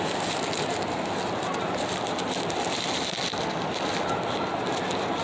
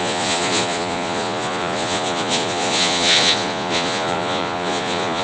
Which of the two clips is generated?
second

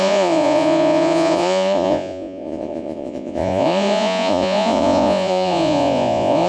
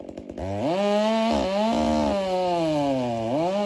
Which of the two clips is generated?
first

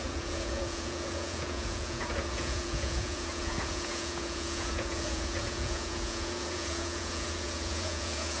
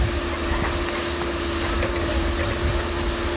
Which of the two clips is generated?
first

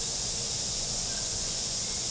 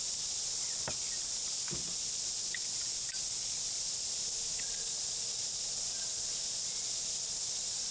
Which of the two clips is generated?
first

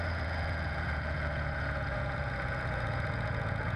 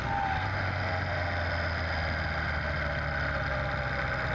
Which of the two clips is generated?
first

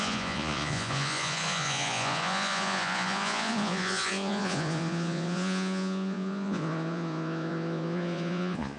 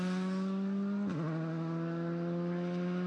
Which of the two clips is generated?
first